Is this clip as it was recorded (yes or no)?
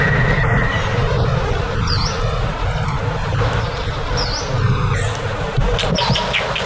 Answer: yes